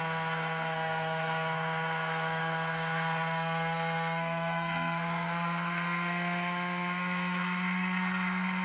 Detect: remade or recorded remade